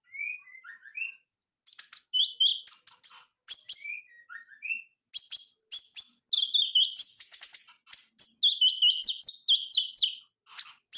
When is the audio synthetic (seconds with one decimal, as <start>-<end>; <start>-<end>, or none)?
7.0-7.6